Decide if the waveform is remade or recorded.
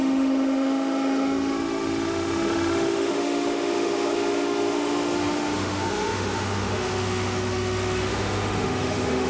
remade